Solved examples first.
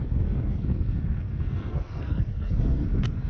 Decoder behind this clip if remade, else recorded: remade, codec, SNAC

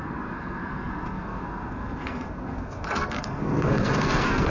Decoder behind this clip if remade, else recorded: remade, codec, SNAC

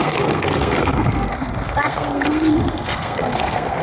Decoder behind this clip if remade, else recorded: remade, codec, SNAC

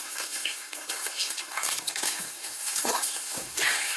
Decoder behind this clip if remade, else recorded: remade, codec, SNAC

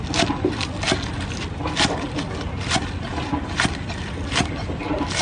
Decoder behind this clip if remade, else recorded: recorded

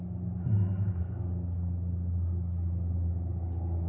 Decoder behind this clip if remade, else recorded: recorded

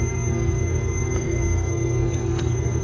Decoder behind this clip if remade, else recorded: remade, codec, SNAC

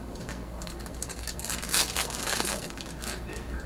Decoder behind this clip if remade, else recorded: remade, codec, SNAC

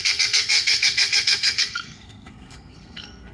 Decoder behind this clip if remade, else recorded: remade, codec, SNAC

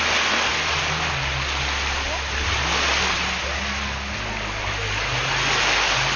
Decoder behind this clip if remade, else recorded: recorded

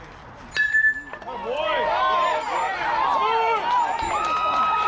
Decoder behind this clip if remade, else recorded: recorded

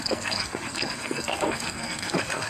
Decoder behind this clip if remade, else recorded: remade, codec, SNAC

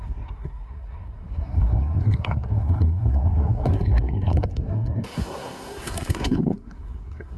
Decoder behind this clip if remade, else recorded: remade, codec, SNAC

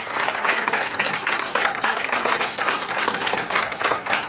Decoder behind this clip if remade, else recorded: remade, codec, SNAC